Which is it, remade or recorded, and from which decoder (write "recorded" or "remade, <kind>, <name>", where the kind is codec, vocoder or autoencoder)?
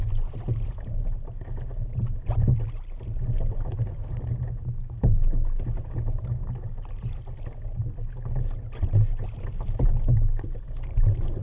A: recorded